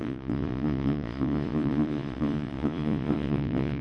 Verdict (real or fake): fake